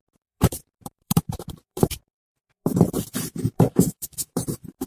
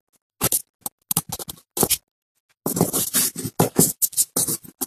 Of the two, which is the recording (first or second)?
second